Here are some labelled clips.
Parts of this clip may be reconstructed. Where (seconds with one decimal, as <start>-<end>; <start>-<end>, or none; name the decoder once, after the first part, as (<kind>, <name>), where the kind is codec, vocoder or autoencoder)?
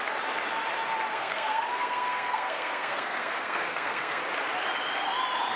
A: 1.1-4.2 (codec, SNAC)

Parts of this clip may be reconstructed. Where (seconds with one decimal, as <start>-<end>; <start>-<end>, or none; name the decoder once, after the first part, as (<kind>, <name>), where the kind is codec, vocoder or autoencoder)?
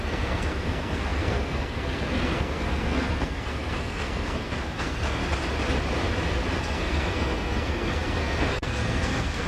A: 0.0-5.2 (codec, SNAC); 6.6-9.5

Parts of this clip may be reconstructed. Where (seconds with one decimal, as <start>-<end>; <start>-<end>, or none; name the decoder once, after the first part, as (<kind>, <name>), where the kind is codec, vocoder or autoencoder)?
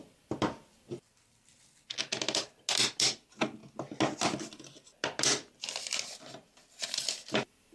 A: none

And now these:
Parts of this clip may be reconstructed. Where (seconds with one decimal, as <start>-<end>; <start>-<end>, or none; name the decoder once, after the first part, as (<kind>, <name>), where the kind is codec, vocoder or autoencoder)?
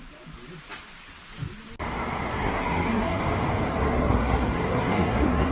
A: 2.3-3.2 (codec, SNAC); 3.7-5.5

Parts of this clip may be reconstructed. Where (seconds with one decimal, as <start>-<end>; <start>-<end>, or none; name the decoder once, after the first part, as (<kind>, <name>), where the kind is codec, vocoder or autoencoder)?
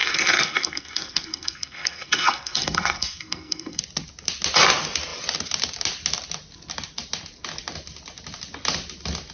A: 0.0-3.8 (codec, SNAC)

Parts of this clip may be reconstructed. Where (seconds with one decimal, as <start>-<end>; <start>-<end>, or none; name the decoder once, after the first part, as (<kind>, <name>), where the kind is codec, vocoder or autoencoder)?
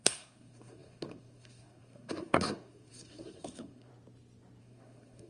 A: 0.0-3.9 (codec, SNAC); 4.6-5.3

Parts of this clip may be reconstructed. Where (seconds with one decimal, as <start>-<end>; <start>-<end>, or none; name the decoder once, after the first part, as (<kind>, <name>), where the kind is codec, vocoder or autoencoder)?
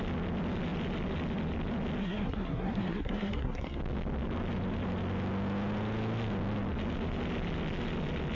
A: 2.0-3.8 (codec, SNAC)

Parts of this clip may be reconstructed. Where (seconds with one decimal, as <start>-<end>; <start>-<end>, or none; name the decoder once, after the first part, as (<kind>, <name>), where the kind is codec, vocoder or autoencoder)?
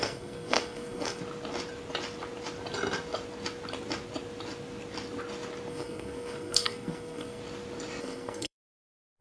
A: 0.0-1.2 (codec, SNAC); 5.7-7.4; 8.0-9.2